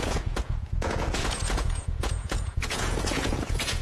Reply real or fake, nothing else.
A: fake